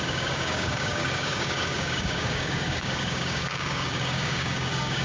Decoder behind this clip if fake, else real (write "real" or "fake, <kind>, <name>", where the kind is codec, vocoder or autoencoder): fake, codec, DAC